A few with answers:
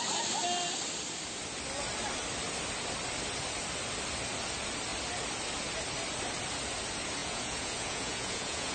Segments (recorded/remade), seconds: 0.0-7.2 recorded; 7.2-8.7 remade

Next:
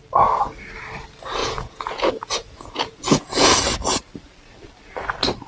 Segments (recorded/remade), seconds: 0.0-1.4 recorded; 1.4-3.6 remade; 3.6-5.5 recorded

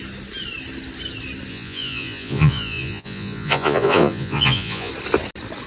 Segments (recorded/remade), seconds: 0.0-1.5 recorded; 1.5-4.9 remade; 4.9-5.7 recorded

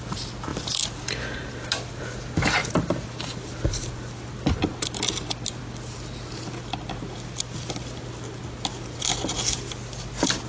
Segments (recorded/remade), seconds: 0.0-10.5 recorded